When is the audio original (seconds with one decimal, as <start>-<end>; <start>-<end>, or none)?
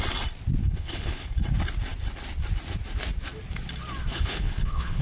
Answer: 0.0-0.6; 1.3-4.1